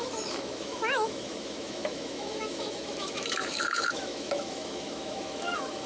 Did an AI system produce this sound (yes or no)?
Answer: yes